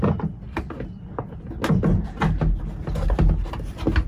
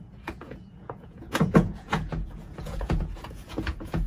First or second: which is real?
first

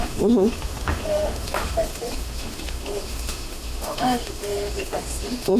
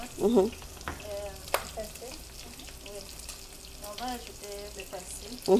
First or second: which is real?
second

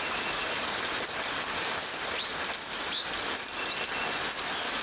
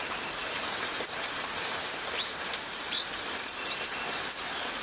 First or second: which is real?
first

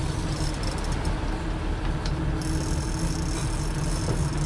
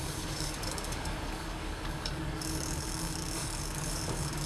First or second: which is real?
first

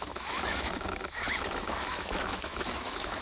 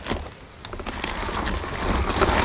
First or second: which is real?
second